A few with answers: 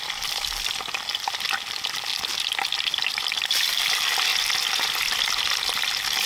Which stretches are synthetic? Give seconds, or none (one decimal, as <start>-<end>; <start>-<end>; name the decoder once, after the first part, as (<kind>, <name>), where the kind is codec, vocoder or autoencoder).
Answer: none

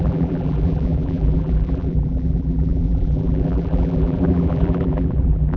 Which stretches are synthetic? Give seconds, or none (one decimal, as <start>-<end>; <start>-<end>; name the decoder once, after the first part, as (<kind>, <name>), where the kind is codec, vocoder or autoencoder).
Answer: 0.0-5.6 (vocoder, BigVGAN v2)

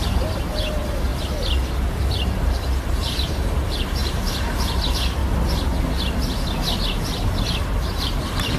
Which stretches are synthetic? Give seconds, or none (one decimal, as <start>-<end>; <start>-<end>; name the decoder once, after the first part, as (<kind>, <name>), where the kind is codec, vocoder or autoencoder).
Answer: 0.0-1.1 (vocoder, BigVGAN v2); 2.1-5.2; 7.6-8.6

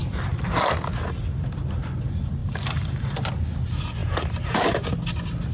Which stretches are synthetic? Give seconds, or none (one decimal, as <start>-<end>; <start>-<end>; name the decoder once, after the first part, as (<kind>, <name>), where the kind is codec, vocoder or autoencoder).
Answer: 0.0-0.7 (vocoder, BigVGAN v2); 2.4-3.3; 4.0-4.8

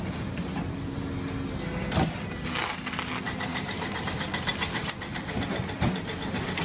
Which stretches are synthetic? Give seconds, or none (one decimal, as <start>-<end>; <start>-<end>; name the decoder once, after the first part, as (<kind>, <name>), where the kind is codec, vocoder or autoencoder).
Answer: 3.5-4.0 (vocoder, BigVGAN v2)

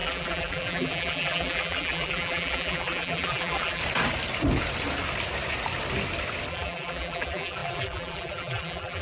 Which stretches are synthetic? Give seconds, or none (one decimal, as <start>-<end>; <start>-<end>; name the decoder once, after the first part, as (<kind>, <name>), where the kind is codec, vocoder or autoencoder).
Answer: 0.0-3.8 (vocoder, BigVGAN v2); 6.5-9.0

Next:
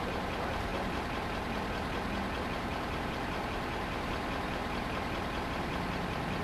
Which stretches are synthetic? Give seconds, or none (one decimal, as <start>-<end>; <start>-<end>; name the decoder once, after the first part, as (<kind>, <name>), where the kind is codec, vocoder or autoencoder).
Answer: 0.0-0.7 (vocoder, BigVGAN v2); 2.5-4.6; 5.5-6.4

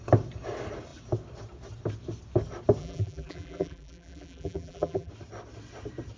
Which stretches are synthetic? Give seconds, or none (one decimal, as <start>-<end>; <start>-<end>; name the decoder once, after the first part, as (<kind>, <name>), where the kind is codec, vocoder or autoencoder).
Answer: 2.8-5.1 (vocoder, BigVGAN v2)